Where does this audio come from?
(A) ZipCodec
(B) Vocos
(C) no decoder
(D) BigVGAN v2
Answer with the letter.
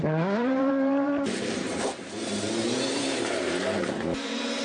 D